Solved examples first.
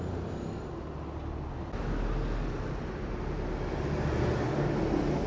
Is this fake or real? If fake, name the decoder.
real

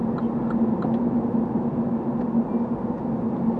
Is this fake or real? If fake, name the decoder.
real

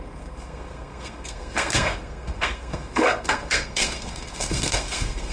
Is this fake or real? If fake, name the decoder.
fake, codec, SNAC